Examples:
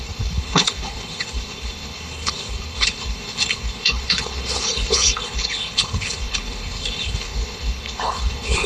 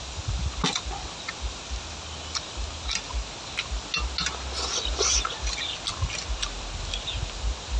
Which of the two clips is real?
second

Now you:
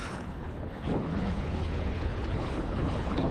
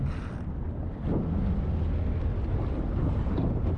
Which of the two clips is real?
second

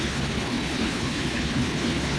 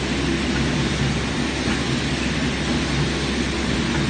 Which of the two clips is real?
second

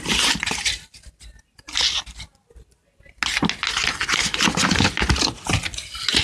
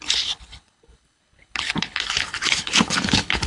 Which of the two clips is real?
first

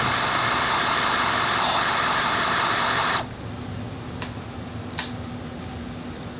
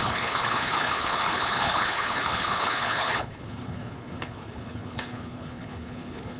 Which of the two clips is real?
first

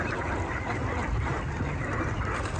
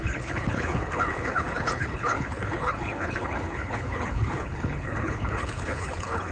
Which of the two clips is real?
first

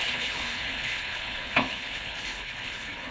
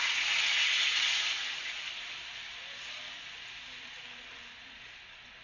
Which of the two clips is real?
second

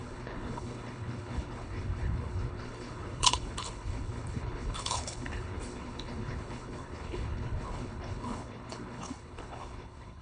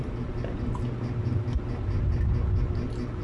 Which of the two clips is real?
second